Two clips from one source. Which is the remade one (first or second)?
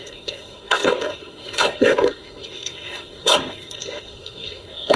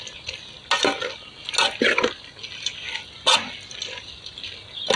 first